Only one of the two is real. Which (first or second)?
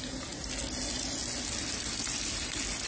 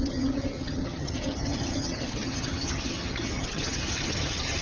first